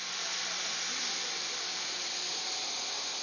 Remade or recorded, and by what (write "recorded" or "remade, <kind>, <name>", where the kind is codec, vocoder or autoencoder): recorded